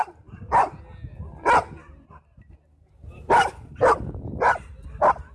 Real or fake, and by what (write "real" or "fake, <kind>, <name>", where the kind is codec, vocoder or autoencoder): real